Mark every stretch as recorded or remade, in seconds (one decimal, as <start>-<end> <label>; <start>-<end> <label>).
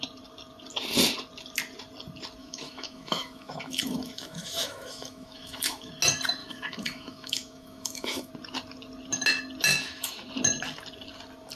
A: 0.0-2.4 recorded; 2.4-5.9 remade; 5.9-6.4 recorded; 6.4-8.3 remade; 8.3-9.7 recorded; 9.7-10.3 remade; 10.3-11.6 recorded